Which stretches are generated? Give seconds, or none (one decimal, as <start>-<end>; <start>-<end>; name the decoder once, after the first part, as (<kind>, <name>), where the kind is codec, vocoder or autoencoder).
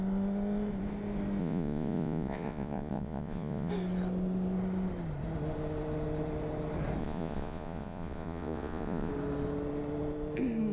1.4-3.7 (vocoder, Vocos); 7.0-9.1